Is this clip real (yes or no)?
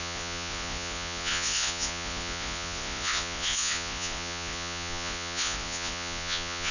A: no